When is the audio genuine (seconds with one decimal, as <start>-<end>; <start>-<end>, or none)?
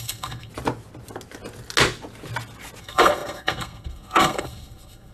0.5-2.8